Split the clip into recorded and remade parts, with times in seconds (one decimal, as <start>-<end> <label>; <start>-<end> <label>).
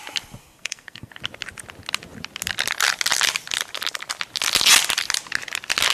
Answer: 0.0-0.4 recorded; 0.4-1.1 remade; 1.1-5.9 recorded